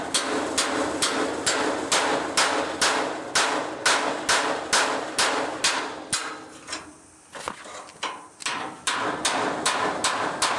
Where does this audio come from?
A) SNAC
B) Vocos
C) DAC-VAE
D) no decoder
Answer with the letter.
D